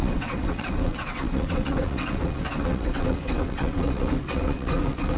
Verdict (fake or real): fake